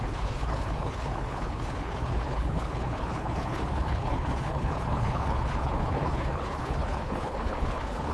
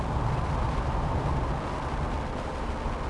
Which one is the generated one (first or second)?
first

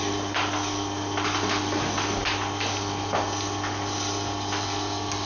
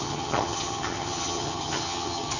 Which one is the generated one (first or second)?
second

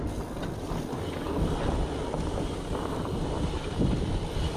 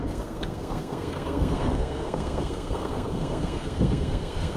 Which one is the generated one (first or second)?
second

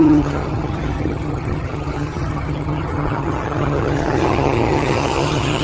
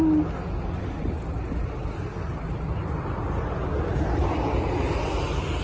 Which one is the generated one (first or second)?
first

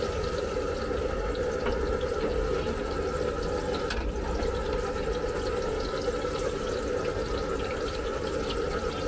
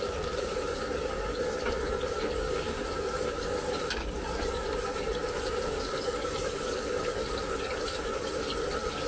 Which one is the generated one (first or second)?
second